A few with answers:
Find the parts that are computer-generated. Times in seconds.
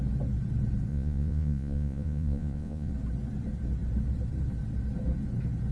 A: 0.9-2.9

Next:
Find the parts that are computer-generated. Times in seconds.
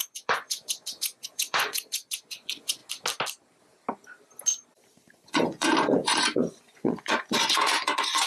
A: 0.0-2.8; 5.1-8.3